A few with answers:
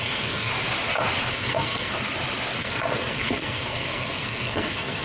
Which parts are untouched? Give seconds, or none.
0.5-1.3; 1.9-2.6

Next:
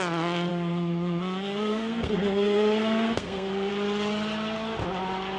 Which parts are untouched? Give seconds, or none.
0.0-0.5; 3.7-5.4

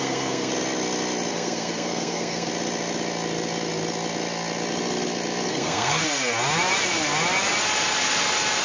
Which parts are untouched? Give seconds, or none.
0.5-1.3; 2.5-5.5; 6.0-8.6

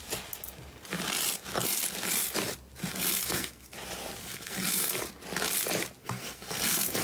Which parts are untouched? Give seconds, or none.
0.0-2.9; 3.7-4.2; 5.0-6.0